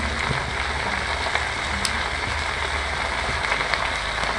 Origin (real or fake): real